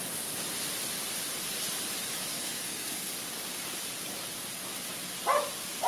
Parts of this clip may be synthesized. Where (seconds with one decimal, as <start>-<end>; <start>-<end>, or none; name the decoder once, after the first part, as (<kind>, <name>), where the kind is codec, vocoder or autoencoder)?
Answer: 2.3-3.1 (codec, SNAC)